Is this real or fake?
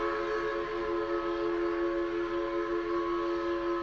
real